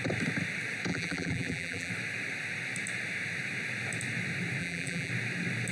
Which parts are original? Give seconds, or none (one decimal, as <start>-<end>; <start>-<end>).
0.0-0.9; 1.9-4.6; 5.1-5.7